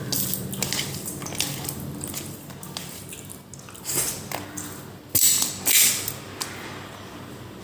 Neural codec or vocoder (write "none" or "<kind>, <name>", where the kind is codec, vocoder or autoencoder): none